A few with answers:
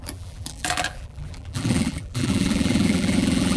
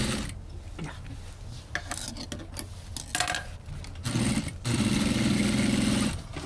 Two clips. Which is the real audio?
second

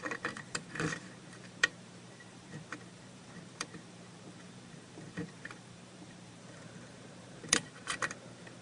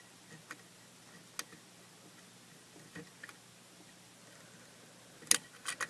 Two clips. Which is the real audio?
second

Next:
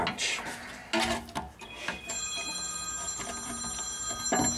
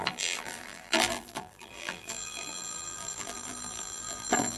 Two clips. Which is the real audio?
first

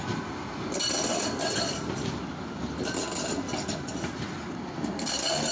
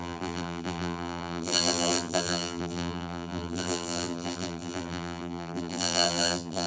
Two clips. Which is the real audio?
first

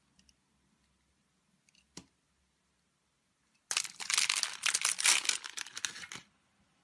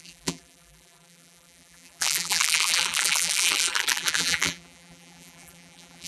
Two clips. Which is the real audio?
first